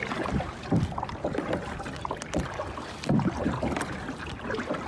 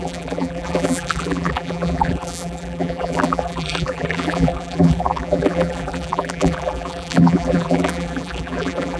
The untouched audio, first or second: first